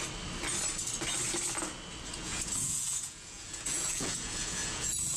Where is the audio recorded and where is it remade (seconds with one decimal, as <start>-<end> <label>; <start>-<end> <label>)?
0.0-2.1 recorded; 2.1-5.2 remade